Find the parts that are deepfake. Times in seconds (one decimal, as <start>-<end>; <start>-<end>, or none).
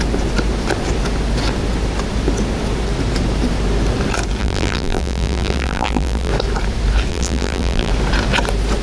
4.4-6.3; 7.1-7.9